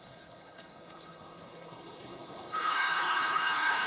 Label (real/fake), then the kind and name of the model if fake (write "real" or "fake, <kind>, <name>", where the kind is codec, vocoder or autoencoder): fake, codec, HILCodec